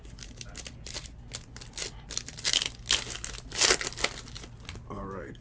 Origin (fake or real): real